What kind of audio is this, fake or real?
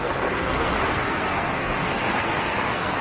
fake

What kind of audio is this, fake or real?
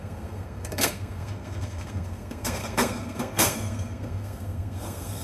fake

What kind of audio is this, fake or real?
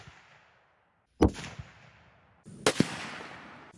real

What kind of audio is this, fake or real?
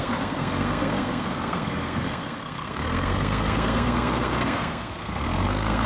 fake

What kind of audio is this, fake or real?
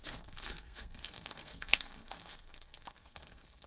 fake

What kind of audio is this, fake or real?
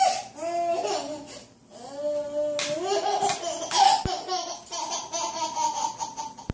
real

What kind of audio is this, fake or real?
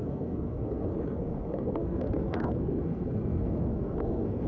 fake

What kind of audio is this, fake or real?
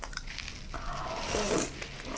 real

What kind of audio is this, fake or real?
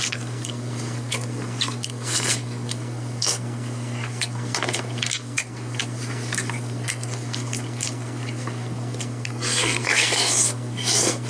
fake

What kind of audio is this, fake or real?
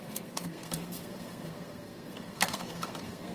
fake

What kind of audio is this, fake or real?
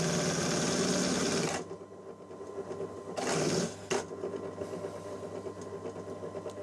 real